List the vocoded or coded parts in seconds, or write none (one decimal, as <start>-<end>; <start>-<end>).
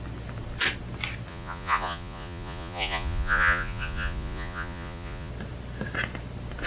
1.3-5.3